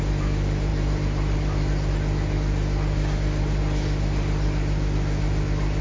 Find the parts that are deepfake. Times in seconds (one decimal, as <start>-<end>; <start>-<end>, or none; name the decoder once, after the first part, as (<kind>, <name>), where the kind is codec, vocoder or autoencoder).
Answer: none